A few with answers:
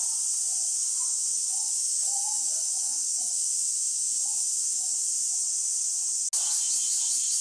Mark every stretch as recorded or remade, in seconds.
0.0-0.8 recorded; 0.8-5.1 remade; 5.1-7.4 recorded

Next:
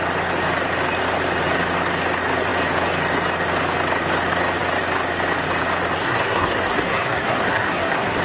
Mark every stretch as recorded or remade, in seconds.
0.0-6.0 recorded; 6.0-8.2 remade

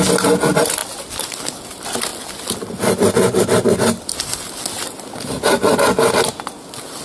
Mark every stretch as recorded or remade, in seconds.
0.0-7.0 recorded

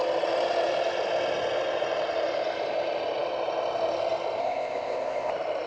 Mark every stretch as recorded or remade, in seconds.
0.0-4.4 recorded; 4.4-5.3 remade; 5.3-5.7 recorded

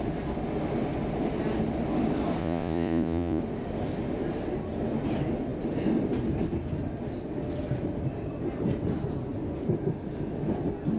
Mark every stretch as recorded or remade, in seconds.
0.0-2.4 recorded; 2.4-3.4 remade; 3.4-11.0 recorded

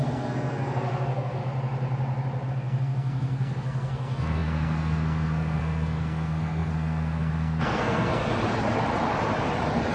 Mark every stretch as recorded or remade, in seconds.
0.0-1.4 remade; 1.4-2.5 recorded; 2.5-8.3 remade; 8.3-9.9 recorded

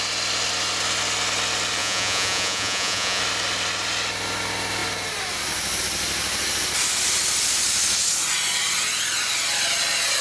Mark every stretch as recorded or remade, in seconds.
0.0-1.8 recorded; 1.8-3.2 remade; 3.2-10.2 recorded

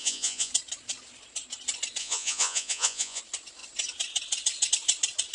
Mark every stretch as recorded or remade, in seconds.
0.0-0.5 remade; 0.5-2.0 recorded; 2.0-3.2 remade; 3.2-5.3 recorded